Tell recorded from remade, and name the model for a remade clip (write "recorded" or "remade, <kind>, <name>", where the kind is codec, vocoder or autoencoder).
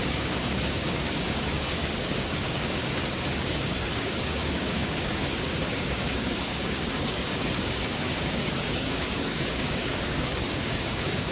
remade, codec, DAC